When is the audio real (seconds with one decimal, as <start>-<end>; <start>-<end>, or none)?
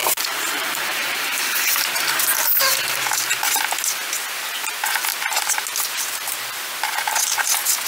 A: 2.8-7.9